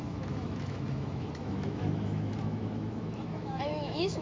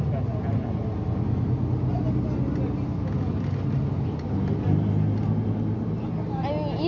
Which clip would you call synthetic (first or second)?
first